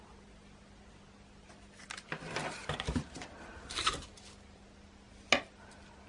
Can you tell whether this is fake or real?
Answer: real